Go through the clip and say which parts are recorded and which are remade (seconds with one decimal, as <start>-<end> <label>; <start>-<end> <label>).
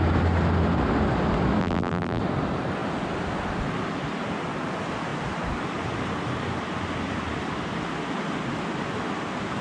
0.0-1.6 recorded; 1.6-2.2 remade; 2.2-9.6 recorded